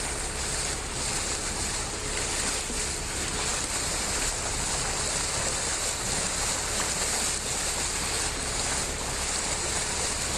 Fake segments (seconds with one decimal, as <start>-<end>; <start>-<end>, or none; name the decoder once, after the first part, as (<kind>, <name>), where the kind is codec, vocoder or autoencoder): 3.5-4.3 (vocoder, BigVGAN v2)